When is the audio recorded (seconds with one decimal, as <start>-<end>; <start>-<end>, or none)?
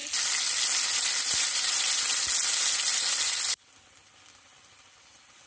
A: 0.0-5.5